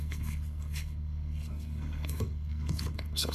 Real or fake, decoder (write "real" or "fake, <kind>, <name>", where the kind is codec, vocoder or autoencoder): fake, codec, SNAC